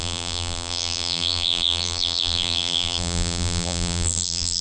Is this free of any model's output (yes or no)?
no